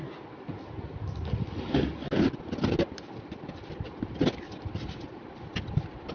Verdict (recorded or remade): recorded